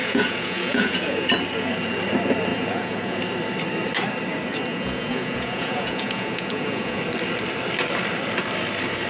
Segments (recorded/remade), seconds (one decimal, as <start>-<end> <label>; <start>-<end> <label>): 0.0-1.3 remade; 1.3-2.5 recorded; 2.5-3.2 remade; 3.2-4.7 recorded; 4.7-7.0 remade; 7.0-9.1 recorded